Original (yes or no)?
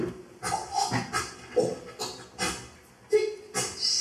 yes